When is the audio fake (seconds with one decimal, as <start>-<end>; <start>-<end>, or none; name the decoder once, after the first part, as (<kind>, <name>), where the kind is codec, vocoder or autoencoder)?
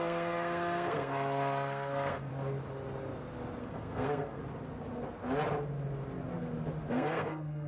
0.0-2.3 (codec, SNAC); 3.6-4.4; 6.9-7.7